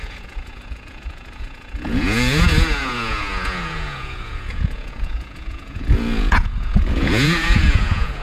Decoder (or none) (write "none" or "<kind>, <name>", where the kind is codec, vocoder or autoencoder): vocoder, Vocos